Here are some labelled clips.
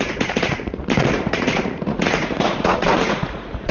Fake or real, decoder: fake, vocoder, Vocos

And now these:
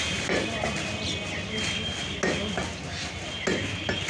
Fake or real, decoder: real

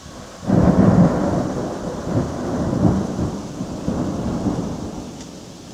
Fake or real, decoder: real